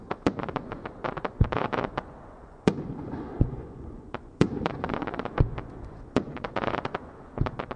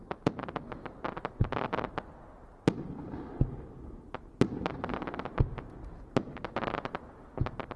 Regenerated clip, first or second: first